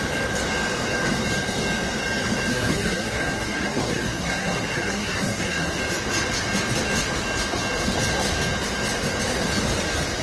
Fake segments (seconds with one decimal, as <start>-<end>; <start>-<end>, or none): 2.5-5.8